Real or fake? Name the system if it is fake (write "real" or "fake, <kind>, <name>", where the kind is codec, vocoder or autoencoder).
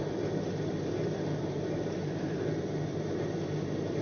fake, vocoder, BigVGAN v2